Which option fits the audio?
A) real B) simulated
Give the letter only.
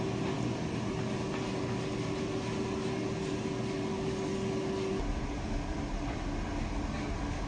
A